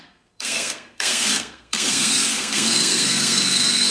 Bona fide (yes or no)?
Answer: no